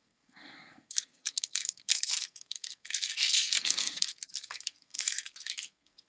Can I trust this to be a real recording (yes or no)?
no